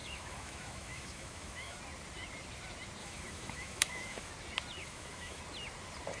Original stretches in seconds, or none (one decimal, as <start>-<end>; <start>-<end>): 1.8-3.0; 4.3-4.8; 5.4-6.2

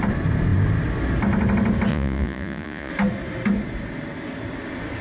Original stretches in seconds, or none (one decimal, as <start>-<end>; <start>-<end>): 0.0-1.9; 2.9-5.0

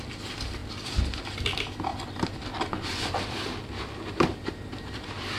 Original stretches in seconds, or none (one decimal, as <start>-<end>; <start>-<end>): 0.0-5.4

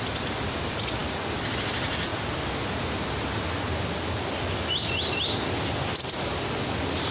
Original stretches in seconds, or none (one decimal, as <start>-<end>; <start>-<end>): 0.0-7.1

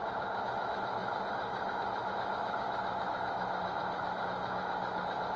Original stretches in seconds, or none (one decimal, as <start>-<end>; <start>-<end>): none

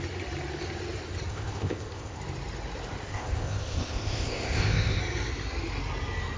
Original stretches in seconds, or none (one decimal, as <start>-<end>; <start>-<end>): 0.0-1.3; 2.2-3.1; 5.0-6.4

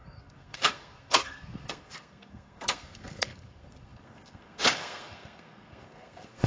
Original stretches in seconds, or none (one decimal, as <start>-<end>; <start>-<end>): none